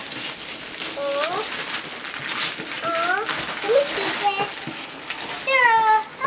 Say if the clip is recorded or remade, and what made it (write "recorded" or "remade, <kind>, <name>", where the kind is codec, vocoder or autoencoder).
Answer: recorded